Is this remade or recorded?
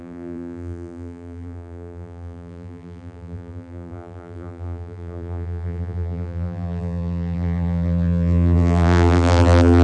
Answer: remade